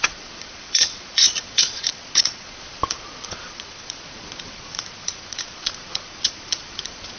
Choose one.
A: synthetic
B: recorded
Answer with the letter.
A